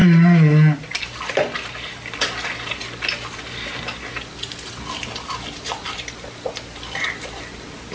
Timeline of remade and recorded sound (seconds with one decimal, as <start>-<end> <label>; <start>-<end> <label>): 0.0-7.9 recorded